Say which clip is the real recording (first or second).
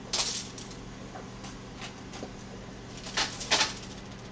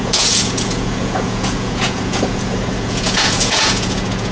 first